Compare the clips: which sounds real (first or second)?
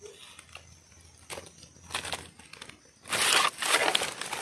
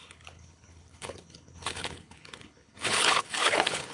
first